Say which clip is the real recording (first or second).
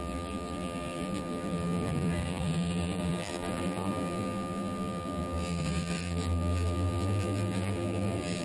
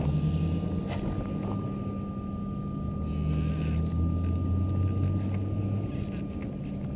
second